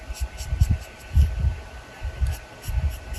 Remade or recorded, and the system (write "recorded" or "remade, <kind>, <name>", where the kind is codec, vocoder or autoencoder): recorded